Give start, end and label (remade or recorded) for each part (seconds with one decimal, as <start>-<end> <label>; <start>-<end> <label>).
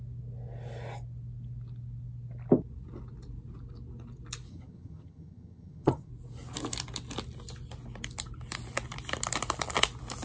0.0-4.5 recorded; 4.5-6.1 remade; 6.1-10.2 recorded